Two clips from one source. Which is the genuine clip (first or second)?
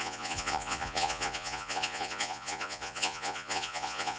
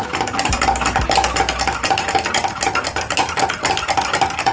second